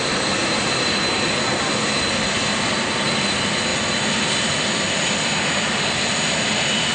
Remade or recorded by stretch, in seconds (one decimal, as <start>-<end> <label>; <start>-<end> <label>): 0.0-0.4 recorded; 0.4-1.3 remade; 1.3-6.9 recorded